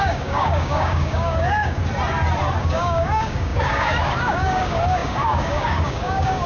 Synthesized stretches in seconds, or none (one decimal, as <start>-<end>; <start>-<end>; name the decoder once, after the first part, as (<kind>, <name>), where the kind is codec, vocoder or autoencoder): 0.0-1.8 (codec, DAC); 2.6-6.5